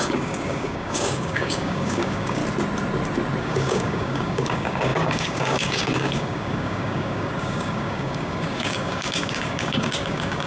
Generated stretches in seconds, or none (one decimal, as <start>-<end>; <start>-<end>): 0.0-2.4; 3.4-10.5